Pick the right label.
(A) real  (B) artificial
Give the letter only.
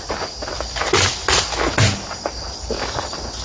A